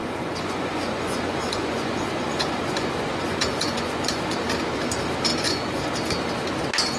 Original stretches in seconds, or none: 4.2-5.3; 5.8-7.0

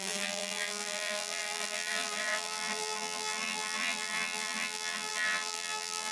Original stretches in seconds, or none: none

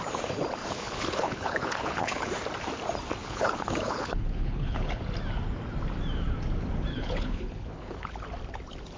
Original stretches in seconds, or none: 0.0-0.6; 2.3-3.2; 5.0-6.9; 8.1-9.0